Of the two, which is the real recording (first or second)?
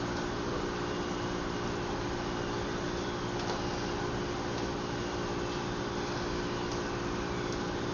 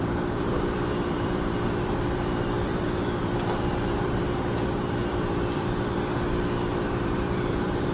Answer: first